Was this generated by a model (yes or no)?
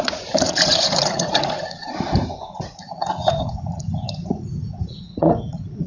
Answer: yes